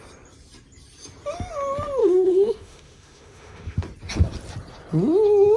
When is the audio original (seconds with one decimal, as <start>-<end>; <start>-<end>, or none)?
0.0-2.0; 3.8-5.6